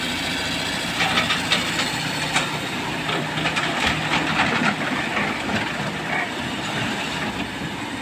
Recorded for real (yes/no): no